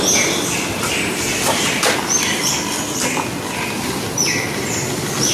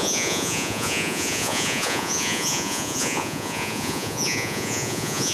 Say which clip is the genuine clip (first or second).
first